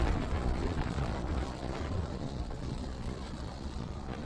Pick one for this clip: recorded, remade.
remade